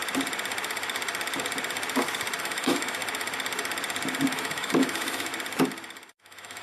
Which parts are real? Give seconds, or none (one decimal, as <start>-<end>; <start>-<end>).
0.0-2.4; 3.0-4.3; 5.3-6.1